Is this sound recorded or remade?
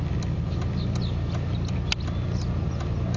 recorded